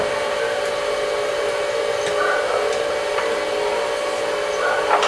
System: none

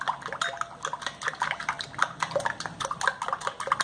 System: none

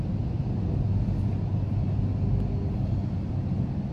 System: none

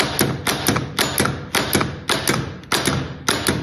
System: none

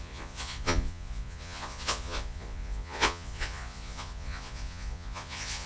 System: vocoder, Vocos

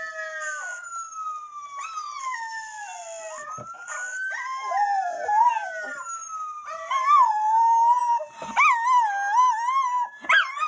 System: none